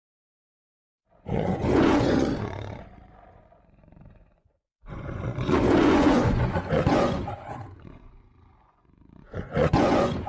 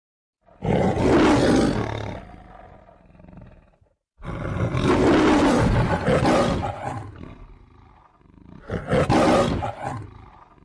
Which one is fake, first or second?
first